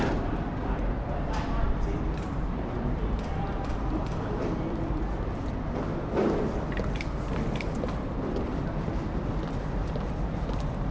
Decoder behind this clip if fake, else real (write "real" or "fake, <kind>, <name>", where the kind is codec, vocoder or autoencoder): fake, vocoder, BigVGAN v2